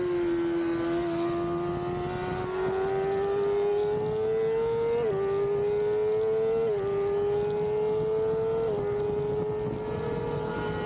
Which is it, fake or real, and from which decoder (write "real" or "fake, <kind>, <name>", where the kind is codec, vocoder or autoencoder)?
real